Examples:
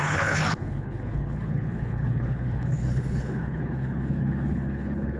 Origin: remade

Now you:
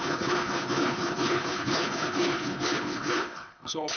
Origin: remade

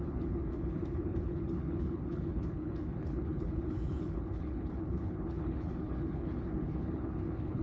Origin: remade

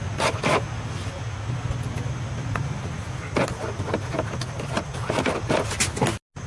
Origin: recorded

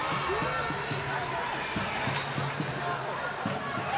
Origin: recorded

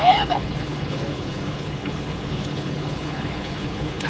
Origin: remade